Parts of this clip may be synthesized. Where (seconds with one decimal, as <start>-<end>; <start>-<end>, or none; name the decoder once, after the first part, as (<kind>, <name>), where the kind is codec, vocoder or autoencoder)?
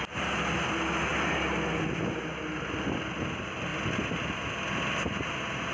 none